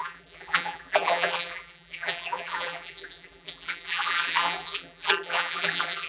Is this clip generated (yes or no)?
yes